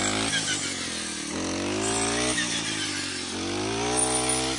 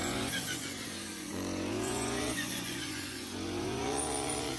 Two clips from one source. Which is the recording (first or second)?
first